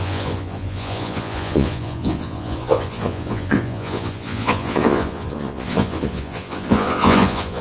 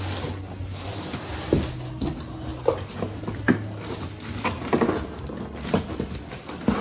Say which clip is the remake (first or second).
first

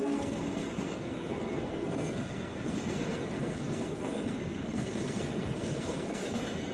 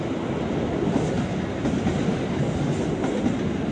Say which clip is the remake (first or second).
first